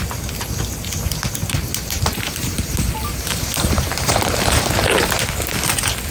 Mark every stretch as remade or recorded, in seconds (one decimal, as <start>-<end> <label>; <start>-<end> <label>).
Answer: 0.0-1.4 recorded; 1.4-4.7 remade; 4.7-6.1 recorded